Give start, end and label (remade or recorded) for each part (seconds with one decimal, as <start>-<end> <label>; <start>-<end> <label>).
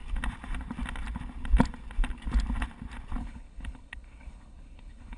0.0-3.2 recorded; 3.2-5.2 remade